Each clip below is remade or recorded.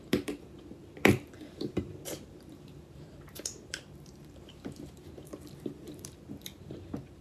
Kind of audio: remade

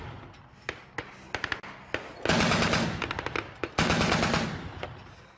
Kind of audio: recorded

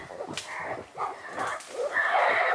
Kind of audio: remade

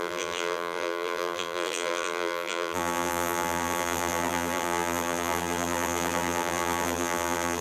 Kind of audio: remade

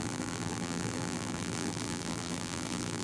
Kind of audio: remade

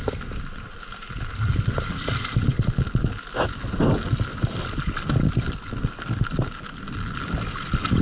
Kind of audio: recorded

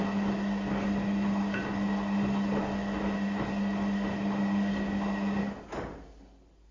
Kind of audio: recorded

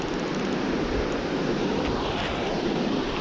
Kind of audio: remade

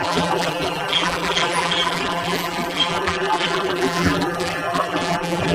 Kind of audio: remade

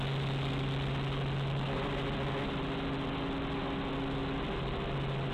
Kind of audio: recorded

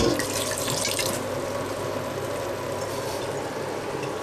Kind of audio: recorded